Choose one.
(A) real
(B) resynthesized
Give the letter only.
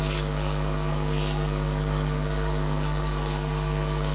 B